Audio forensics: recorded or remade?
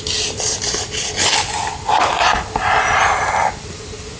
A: recorded